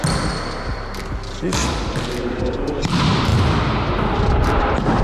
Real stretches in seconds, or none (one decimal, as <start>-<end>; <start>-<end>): 0.0-5.0